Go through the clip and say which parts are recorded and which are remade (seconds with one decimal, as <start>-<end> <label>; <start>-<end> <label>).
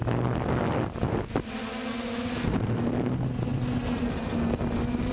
0.0-3.5 recorded; 3.5-4.6 remade; 4.6-5.1 recorded